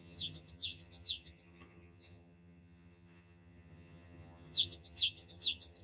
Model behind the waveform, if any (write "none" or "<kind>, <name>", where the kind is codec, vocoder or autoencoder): vocoder, HiFi-GAN